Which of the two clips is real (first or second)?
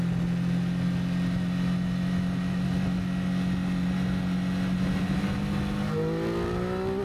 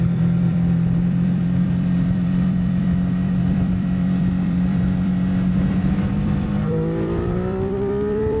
first